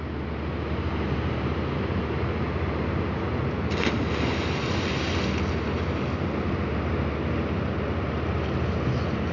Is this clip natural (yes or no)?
yes